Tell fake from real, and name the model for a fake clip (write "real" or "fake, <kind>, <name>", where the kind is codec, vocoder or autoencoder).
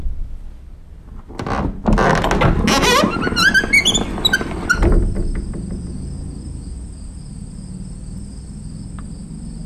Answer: real